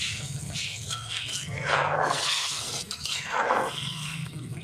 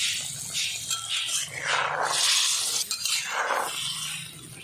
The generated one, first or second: first